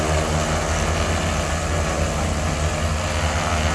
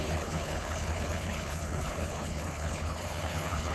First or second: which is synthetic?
second